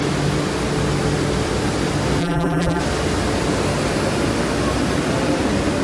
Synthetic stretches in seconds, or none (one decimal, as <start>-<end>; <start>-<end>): 2.2-2.8